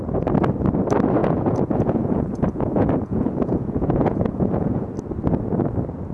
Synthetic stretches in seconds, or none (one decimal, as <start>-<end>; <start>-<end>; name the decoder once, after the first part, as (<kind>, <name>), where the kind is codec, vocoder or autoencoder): 1.2-4.9 (vocoder, Vocos)